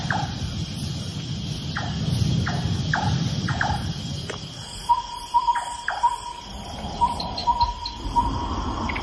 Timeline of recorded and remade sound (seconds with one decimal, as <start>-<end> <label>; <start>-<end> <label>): 0.0-9.0 recorded

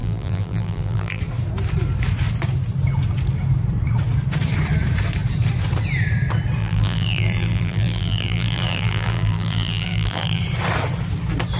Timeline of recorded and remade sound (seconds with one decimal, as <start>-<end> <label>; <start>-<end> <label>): 0.0-1.2 remade; 1.2-6.6 recorded; 6.6-10.4 remade; 10.4-11.6 recorded

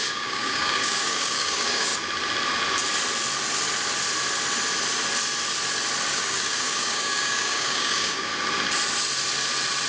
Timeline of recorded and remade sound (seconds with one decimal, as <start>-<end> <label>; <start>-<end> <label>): 0.0-1.9 remade; 1.9-6.1 recorded; 6.1-8.3 remade; 8.3-9.9 recorded

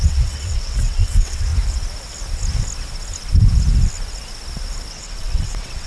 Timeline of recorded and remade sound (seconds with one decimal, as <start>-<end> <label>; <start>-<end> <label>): 0.0-1.5 remade; 1.5-4.9 recorded; 4.9-5.9 remade

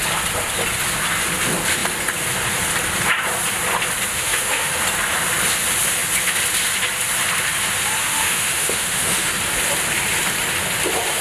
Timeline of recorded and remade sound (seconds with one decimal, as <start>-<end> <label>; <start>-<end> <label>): 0.0-4.1 recorded; 4.1-4.8 remade; 4.8-8.0 recorded; 8.0-9.3 remade; 9.3-11.2 recorded